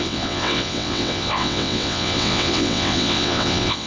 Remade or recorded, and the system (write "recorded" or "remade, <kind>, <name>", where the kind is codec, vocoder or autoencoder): remade, vocoder, WaveNeXt